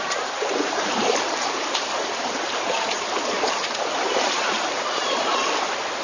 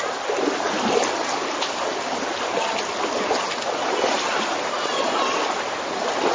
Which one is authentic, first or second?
second